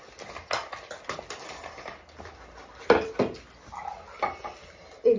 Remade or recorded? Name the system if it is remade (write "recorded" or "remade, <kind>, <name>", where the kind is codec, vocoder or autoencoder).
recorded